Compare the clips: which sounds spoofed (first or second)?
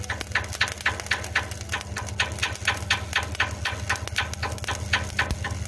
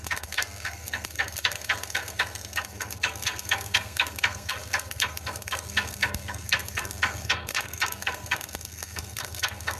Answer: second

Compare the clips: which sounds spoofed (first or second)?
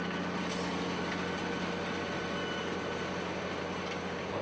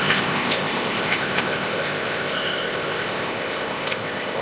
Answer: second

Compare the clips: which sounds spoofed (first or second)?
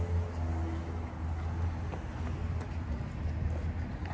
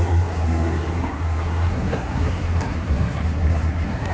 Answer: second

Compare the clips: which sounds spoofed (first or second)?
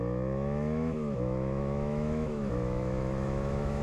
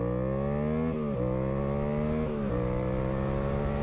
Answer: first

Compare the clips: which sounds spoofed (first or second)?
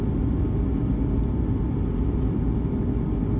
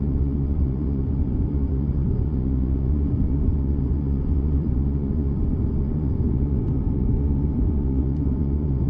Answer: second